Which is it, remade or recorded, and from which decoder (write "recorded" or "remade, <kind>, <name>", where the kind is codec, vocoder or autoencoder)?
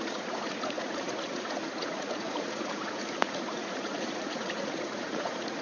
remade, vocoder, Vocos